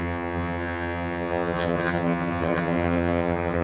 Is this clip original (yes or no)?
no